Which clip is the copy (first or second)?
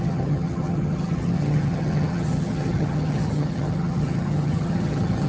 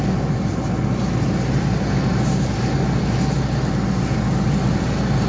first